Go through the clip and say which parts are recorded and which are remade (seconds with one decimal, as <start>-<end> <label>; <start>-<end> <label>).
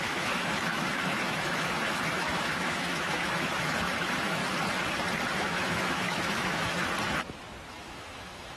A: 0.0-4.4 remade; 4.4-5.3 recorded; 5.3-6.9 remade; 6.9-7.7 recorded; 7.7-8.6 remade